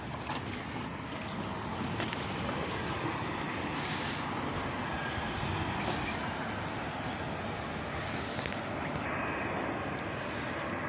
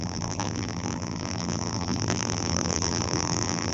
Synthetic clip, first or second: second